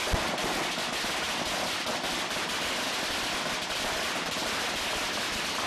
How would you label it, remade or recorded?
remade